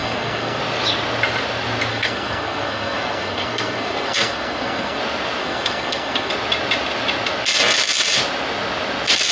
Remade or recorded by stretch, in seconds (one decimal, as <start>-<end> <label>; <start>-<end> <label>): 0.0-0.6 remade; 0.6-1.9 recorded; 1.9-5.0 remade; 5.0-5.4 recorded; 5.4-6.3 remade; 6.3-9.3 recorded